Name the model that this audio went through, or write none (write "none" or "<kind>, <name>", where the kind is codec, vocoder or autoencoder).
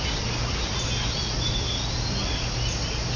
none